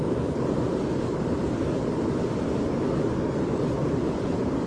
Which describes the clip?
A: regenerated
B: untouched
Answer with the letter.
B